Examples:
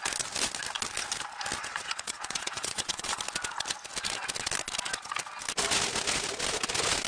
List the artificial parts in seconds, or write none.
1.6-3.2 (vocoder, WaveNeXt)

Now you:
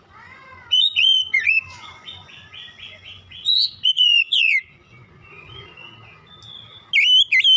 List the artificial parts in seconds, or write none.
0.0-5.7 (vocoder, Vocos)

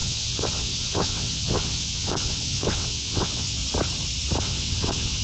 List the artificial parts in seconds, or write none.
0.0-3.6 (vocoder, WaveNeXt); 4.4-5.2

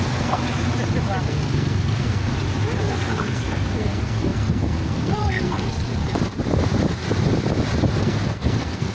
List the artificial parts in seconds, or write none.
0.0-0.4 (codec, SNAC); 1.2-2.3; 2.8-6.0; 8.0-8.9